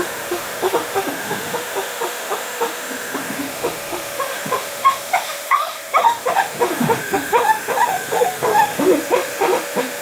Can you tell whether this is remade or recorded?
remade